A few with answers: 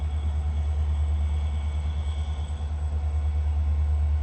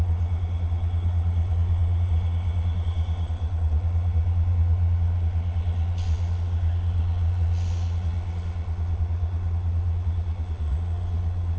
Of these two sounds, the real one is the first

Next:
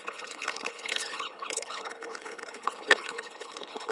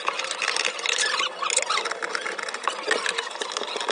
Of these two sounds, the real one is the second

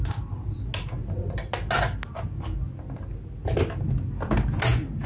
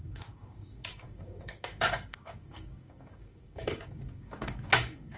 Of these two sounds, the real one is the first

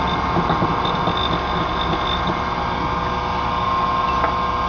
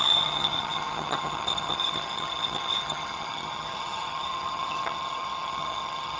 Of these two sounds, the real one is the first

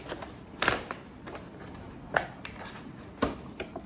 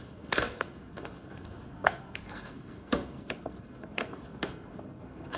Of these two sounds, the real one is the first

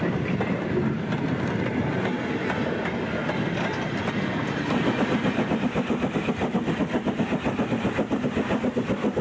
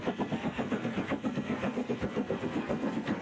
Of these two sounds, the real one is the first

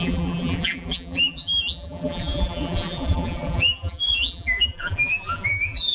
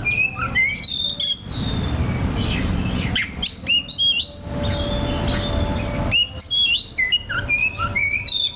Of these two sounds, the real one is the second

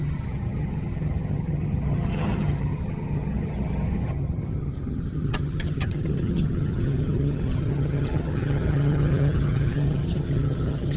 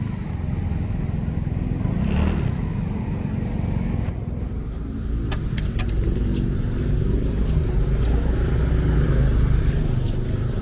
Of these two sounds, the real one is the second